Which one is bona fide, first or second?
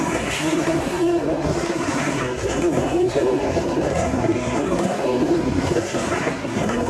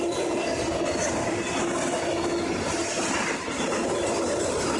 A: second